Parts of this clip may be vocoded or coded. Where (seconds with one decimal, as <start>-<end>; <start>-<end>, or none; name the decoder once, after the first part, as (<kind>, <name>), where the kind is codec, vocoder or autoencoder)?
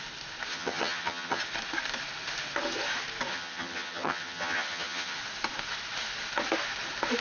0.5-1.4 (vocoder, HiFi-GAN); 3.3-5.2